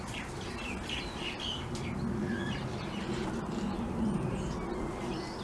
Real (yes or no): yes